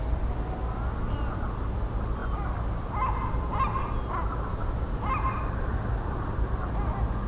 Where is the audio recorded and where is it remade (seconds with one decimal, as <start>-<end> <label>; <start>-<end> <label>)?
0.0-4.5 recorded; 4.5-5.1 remade; 5.1-7.3 recorded